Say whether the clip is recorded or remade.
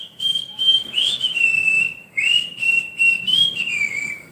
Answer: remade